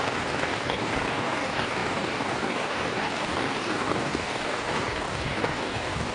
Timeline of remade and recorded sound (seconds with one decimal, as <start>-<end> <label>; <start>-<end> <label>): 0.0-6.1 remade